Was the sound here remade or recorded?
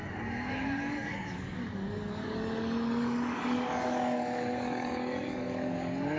remade